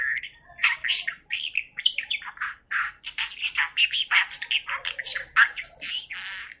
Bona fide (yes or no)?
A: no